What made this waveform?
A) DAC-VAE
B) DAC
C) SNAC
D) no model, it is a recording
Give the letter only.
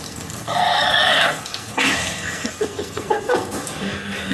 C